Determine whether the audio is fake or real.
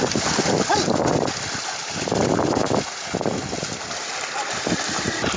real